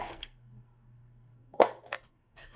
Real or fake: fake